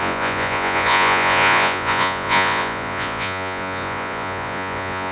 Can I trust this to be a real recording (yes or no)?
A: no